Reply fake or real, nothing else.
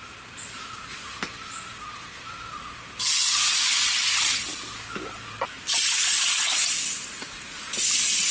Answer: real